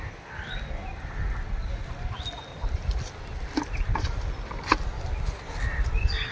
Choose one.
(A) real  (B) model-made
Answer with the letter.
A